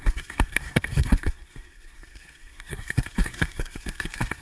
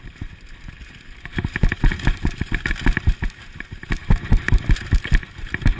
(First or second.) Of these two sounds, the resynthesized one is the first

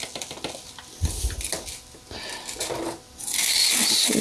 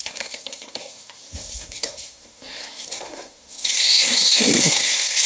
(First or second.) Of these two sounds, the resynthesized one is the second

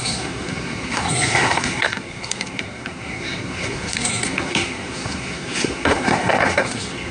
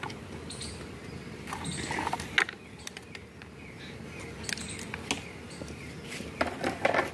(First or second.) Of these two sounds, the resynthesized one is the first